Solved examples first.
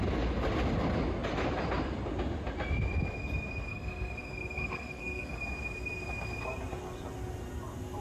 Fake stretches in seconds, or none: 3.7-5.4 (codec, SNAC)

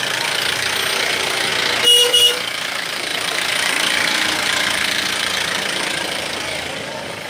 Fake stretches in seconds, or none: 0.0-1.5 (codec, DAC); 2.0-7.3

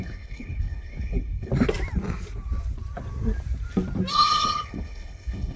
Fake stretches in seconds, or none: 0.0-1.5 (codec, HILCodec); 4.1-5.6

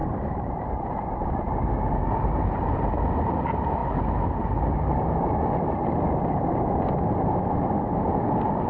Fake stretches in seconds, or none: 0.0-1.1 (vocoder, BigVGAN v2)